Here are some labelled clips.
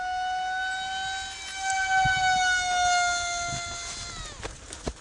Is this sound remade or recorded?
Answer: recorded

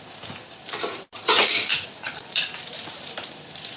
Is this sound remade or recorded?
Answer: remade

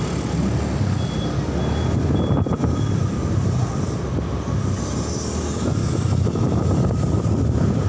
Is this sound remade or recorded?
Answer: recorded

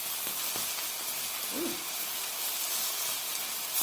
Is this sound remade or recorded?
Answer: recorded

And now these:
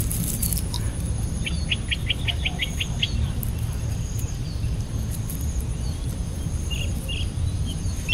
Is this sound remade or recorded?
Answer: recorded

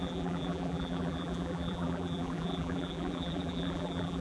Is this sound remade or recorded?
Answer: remade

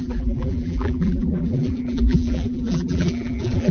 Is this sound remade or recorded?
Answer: remade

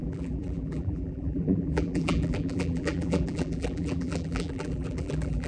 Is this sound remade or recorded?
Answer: remade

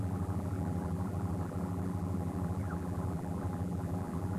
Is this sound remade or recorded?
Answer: remade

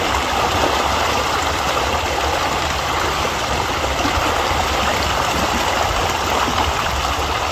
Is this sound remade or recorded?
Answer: recorded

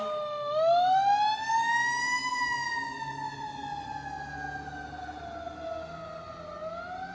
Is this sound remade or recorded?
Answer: recorded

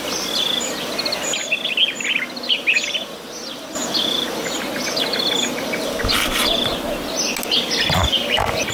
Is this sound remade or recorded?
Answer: recorded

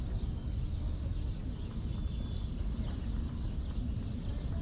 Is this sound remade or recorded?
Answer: recorded